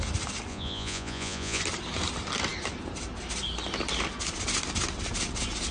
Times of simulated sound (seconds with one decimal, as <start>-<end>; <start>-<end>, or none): 0.5-1.6